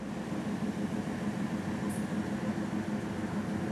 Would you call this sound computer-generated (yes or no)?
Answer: no